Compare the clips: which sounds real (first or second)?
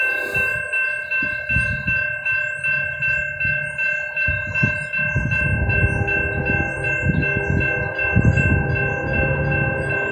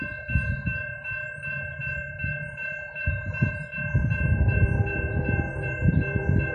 first